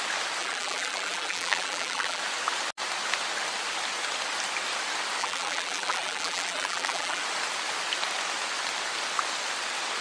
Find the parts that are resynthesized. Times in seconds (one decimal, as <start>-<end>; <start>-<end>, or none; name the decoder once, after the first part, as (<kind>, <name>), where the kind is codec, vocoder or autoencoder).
0.4-2.2 (vocoder, BigVGAN v2); 5.2-7.2